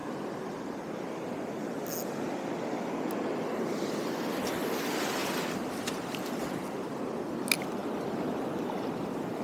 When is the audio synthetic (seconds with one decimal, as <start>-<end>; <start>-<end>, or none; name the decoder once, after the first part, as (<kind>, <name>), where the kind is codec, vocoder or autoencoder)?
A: none